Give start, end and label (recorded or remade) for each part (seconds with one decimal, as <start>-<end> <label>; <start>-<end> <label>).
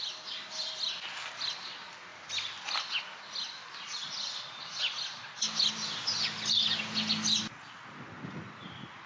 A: 0.0-9.1 recorded